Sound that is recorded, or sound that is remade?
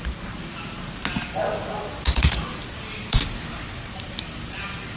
recorded